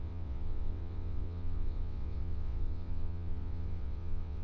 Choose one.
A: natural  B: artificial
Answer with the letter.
B